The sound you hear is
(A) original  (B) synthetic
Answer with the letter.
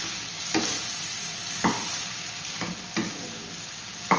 A